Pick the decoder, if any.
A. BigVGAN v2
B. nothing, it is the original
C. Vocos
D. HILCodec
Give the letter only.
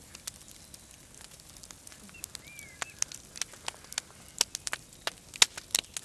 B